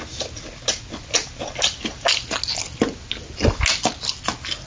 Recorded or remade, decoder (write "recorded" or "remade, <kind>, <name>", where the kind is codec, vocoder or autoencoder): recorded